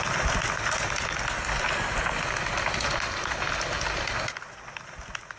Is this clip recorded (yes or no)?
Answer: yes